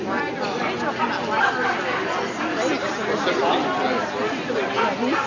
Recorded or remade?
recorded